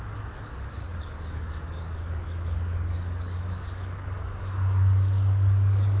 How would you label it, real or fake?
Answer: fake